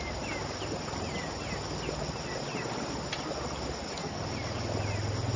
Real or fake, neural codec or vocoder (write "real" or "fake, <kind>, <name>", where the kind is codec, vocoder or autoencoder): real